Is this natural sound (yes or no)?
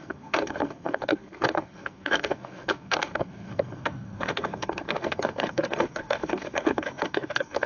no